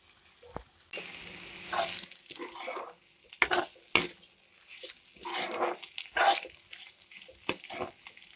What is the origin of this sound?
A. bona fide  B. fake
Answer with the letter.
A